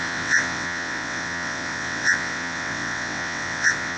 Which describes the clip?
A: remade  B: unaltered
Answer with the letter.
A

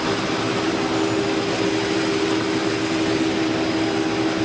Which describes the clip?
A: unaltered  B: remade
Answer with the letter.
A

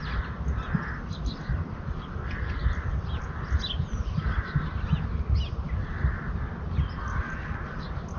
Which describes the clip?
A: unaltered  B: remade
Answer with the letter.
A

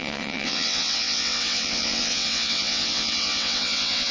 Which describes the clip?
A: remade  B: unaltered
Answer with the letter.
A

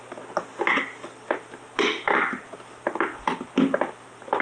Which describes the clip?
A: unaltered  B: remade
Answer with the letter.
A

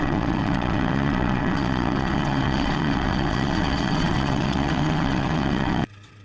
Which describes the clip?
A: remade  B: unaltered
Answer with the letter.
A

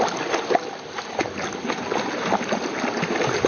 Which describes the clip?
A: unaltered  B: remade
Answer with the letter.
A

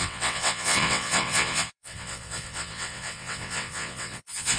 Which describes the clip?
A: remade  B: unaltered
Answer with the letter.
A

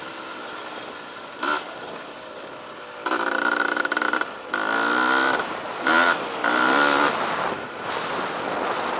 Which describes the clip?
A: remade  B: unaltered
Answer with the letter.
B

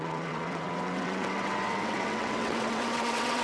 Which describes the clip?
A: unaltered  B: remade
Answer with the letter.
B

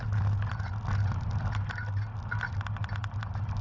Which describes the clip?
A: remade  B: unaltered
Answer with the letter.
B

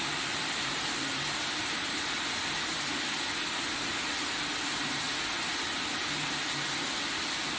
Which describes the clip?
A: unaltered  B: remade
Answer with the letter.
A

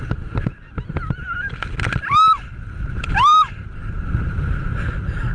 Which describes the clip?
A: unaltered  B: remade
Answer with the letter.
A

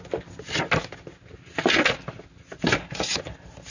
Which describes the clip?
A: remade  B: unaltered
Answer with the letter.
B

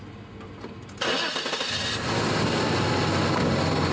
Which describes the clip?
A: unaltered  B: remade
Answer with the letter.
A